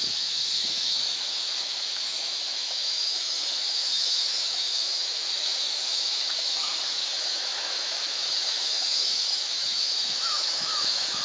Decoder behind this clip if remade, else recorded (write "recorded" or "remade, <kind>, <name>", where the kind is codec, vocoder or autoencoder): remade, autoencoder, DAC-VAE